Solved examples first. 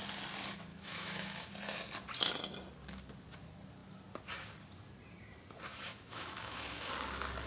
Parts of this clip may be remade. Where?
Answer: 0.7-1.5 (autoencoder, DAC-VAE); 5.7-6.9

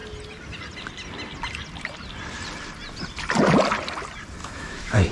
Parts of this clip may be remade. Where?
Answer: 4.4-5.1 (autoencoder, DAC-VAE)

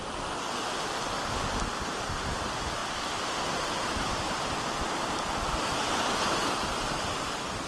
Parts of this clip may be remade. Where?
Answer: none